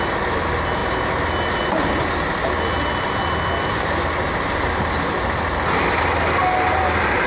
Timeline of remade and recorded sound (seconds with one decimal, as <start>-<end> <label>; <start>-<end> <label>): 0.0-7.3 recorded